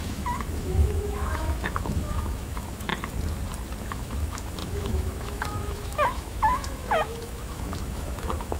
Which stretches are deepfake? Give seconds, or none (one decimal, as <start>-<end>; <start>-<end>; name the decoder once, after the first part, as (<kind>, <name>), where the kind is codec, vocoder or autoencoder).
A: 0.0-2.9 (autoencoder, DAC-VAE); 3.8-8.6